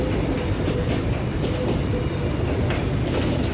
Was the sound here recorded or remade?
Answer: recorded